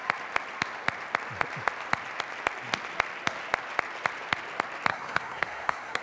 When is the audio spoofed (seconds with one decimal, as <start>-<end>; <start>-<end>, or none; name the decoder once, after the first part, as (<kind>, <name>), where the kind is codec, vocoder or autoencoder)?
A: 4.9-6.0 (codec, SNAC)